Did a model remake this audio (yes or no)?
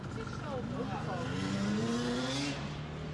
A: no